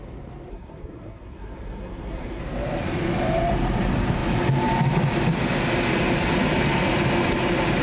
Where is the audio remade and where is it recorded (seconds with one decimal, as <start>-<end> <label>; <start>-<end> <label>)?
0.0-0.5 recorded; 0.5-2.4 remade; 2.4-7.8 recorded